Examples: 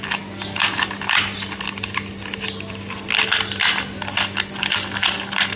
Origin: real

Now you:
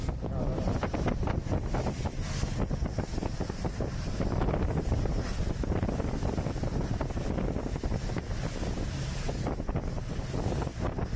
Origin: real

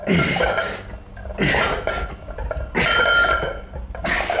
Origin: real